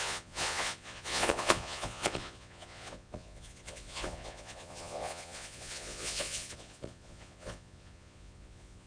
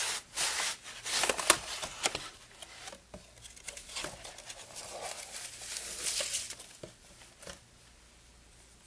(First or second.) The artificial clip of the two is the first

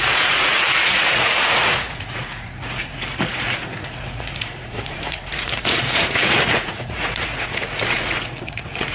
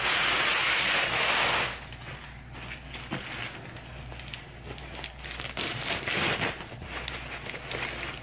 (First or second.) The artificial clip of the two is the first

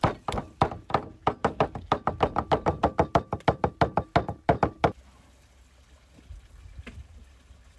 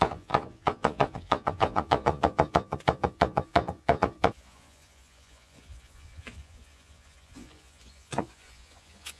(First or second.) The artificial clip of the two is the second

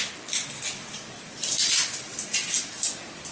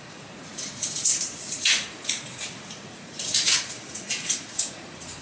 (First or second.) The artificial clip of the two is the second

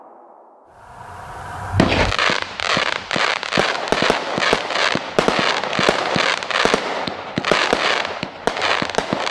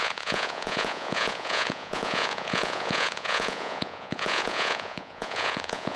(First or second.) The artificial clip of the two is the second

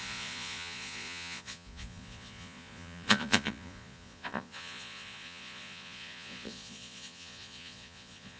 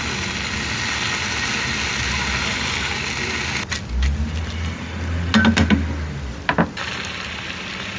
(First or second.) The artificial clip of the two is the first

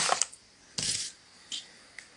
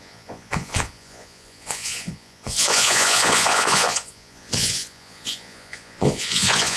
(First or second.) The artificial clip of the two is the second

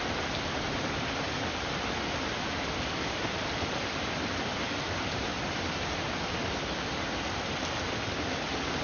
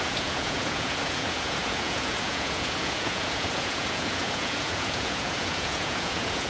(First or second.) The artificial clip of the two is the second